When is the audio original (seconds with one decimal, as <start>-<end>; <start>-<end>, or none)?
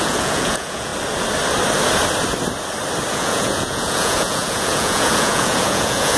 0.9-3.1